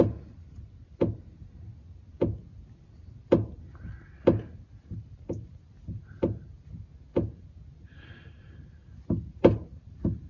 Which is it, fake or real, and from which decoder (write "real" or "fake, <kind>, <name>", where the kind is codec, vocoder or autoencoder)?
real